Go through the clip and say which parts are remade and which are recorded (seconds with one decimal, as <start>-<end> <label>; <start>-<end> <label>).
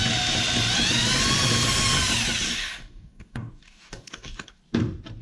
0.0-2.5 recorded; 2.5-4.6 remade; 4.6-5.2 recorded